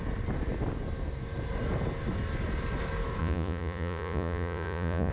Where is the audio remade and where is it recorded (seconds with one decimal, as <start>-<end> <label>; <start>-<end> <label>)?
0.0-3.2 recorded; 3.2-5.1 remade